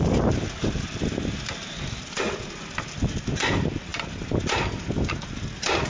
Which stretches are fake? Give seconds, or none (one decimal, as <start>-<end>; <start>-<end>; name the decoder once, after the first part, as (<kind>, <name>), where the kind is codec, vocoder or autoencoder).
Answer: none